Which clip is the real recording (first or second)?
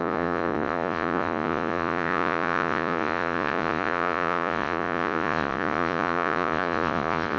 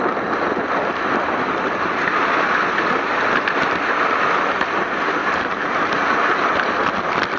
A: second